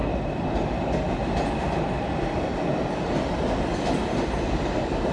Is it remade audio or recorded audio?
recorded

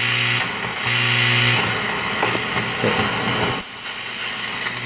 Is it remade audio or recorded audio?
recorded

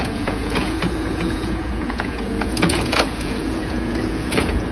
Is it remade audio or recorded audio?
remade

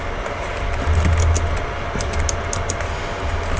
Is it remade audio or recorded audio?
recorded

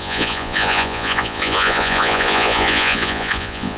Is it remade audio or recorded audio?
remade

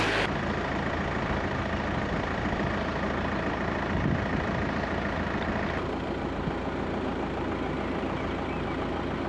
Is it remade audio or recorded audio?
recorded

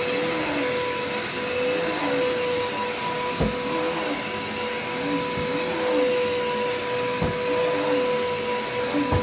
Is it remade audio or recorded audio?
recorded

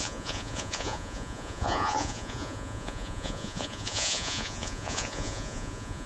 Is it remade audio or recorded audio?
remade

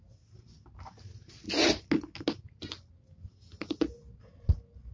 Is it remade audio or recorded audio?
recorded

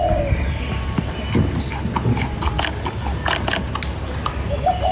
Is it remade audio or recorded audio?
recorded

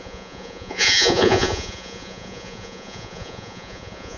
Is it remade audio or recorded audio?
remade